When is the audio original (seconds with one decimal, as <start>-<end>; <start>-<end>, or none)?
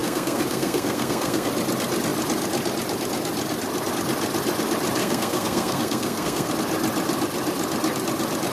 1.5-5.0; 6.5-8.5